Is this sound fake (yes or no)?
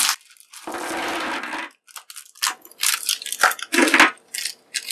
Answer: no